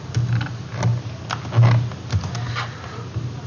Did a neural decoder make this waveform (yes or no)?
no